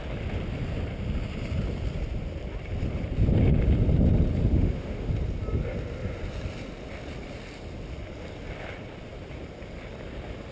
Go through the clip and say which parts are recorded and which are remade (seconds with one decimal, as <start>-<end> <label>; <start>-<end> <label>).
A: 0.0-4.5 recorded; 4.5-5.1 remade; 5.1-10.5 recorded